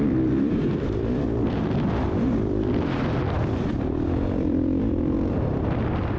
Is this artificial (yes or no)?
yes